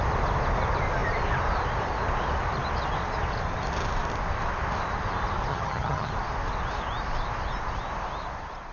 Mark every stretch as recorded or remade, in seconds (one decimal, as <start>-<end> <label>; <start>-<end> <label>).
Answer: 0.0-5.5 recorded; 5.5-6.1 remade; 6.1-8.7 recorded